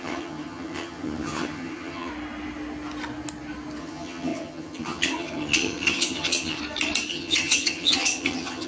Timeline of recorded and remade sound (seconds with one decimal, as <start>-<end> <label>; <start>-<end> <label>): 0.0-2.1 remade; 2.1-3.8 recorded; 3.8-6.6 remade; 6.6-7.1 recorded; 7.1-8.7 remade